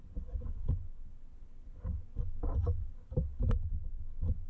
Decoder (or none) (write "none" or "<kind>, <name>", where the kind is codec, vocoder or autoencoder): none